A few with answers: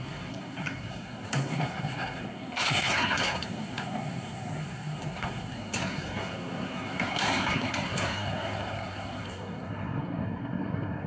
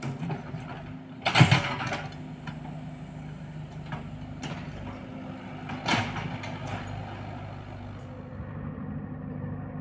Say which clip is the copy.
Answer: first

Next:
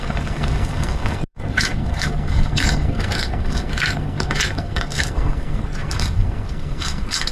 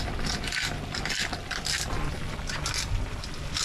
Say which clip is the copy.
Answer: first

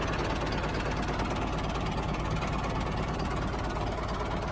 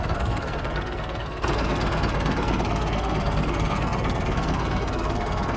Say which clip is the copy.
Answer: second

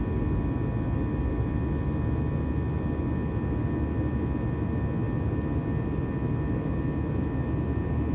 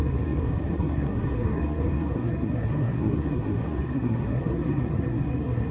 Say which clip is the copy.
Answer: second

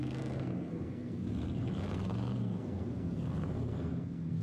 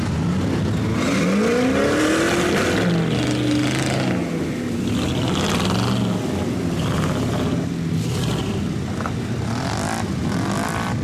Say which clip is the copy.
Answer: first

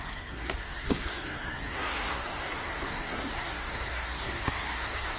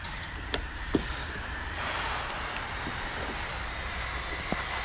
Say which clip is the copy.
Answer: first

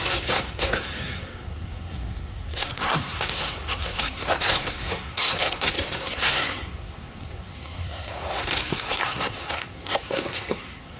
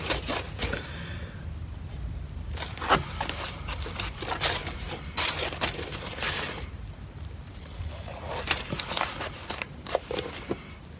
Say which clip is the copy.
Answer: first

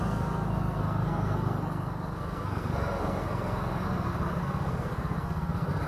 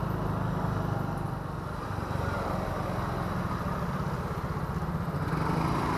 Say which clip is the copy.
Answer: first